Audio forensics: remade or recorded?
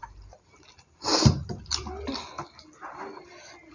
recorded